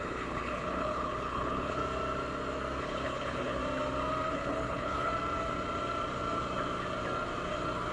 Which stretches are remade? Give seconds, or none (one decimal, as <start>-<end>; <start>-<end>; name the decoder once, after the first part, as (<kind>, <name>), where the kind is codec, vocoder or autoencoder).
0.0-1.8 (codec, HILCodec); 2.8-3.6; 4.3-5.1